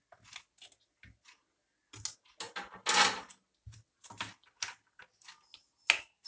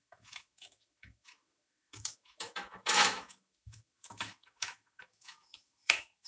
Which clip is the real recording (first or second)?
first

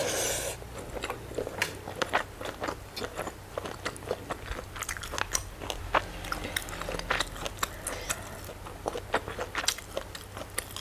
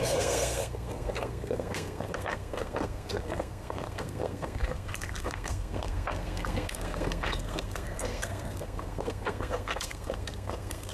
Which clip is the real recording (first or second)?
first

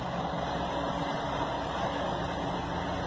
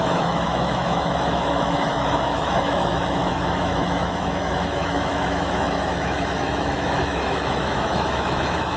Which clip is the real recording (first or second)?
first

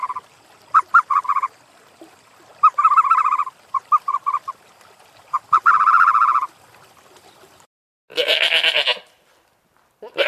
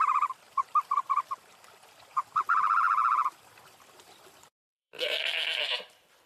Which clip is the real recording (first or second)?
first